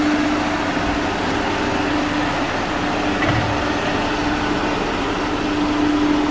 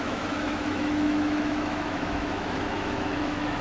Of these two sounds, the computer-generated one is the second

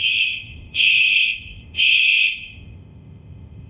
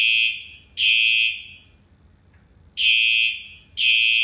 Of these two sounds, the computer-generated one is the first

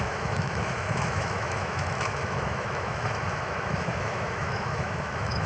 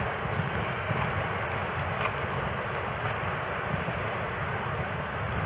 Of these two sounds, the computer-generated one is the first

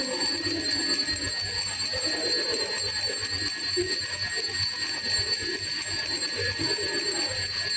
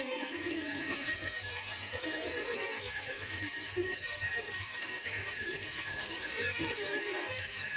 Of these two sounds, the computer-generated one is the second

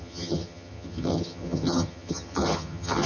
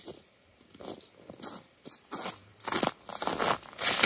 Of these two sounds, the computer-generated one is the first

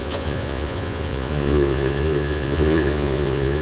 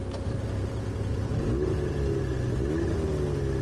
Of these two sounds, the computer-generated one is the first